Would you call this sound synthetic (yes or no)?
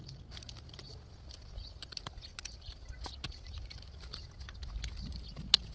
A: no